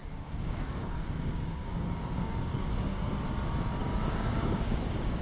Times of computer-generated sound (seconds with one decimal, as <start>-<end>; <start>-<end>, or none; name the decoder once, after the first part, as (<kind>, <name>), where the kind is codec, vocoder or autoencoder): 0.0-3.1 (codec, DAC); 3.8-5.2